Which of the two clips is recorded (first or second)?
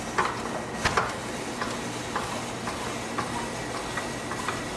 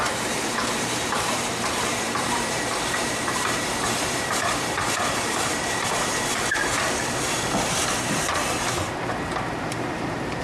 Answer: first